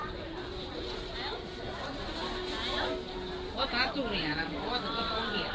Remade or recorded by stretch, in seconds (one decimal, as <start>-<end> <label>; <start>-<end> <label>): 0.0-1.0 remade; 1.0-4.2 recorded; 4.2-5.5 remade